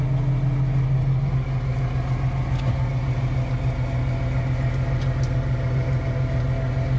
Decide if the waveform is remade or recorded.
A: recorded